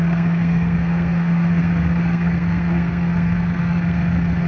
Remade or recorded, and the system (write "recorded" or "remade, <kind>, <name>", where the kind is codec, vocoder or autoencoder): remade, codec, SNAC